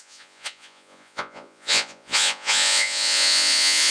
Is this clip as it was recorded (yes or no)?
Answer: no